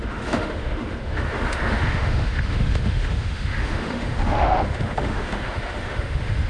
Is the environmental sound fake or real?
fake